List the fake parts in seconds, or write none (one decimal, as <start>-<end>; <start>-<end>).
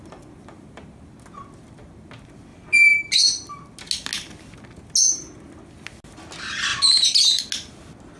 2.5-3.1; 6.7-7.4